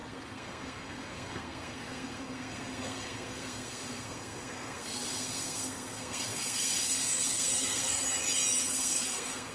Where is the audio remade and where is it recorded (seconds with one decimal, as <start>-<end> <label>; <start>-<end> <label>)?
0.0-8.0 remade; 8.0-8.6 recorded; 8.6-9.5 remade